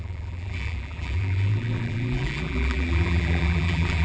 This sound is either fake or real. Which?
fake